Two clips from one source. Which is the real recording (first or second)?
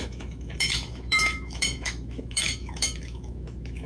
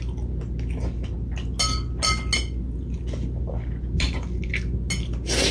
second